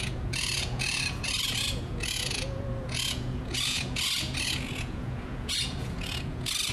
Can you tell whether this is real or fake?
fake